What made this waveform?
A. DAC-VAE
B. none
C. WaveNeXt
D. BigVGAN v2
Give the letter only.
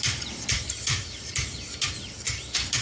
D